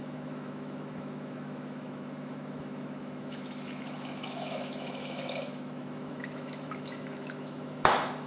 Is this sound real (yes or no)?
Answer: no